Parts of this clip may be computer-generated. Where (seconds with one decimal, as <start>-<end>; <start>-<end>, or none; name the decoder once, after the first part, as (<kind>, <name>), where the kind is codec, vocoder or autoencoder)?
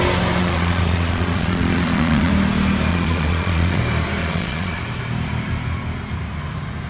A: 0.4-2.3 (vocoder, Vocos); 2.9-3.8; 4.2-4.8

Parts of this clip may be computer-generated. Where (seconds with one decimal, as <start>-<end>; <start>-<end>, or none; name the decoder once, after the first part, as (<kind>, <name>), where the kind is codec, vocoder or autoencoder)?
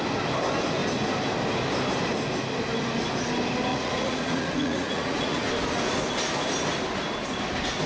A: 3.7-5.5 (vocoder, Vocos)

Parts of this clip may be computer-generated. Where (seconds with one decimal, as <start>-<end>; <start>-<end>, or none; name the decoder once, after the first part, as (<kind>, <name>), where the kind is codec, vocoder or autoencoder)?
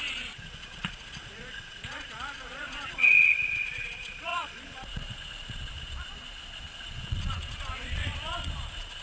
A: 0.0-9.0 (vocoder, Vocos)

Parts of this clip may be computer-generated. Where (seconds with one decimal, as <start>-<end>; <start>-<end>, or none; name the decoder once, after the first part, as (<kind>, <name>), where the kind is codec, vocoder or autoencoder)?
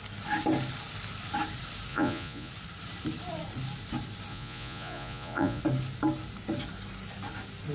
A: 1.9-2.5 (vocoder, Vocos); 4.3-5.6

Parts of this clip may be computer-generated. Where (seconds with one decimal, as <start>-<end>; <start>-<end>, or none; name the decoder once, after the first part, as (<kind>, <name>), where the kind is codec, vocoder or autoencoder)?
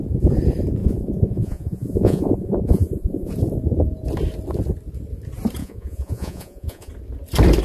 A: 0.8-3.3 (vocoder, Vocos); 5.6-6.9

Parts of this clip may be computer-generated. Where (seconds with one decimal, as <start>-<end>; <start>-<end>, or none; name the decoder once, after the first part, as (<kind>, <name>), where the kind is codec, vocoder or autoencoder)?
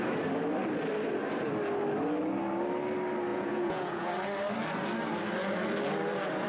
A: 3.3-4.1 (vocoder, Vocos)